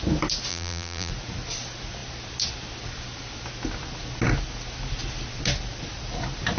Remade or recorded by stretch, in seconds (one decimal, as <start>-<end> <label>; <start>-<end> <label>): 0.0-0.5 recorded; 0.5-1.1 remade; 1.1-6.6 recorded